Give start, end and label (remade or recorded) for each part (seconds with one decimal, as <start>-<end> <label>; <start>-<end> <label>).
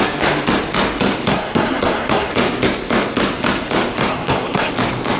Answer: 0.0-1.3 recorded; 1.3-2.3 remade; 2.3-4.1 recorded; 4.1-4.7 remade; 4.7-5.2 recorded